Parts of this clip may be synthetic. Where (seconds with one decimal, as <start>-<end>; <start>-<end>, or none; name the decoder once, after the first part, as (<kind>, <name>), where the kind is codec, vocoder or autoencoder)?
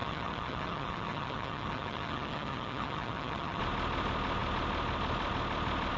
0.0-3.6 (vocoder, HiFi-GAN)